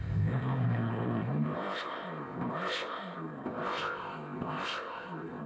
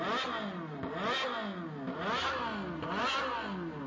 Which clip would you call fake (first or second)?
first